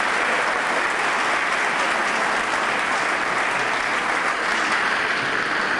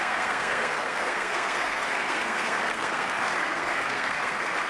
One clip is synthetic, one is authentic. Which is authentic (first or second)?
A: first